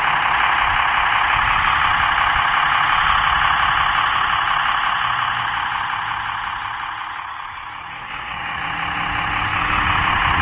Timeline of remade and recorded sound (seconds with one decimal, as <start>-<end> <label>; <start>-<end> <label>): 0.0-7.3 recorded; 7.3-8.6 remade; 8.6-10.4 recorded